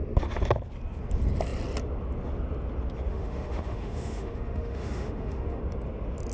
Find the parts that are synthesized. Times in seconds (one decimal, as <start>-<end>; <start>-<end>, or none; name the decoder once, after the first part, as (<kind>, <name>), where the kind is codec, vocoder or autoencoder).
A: 3.1-5.6 (autoencoder, DAC-VAE)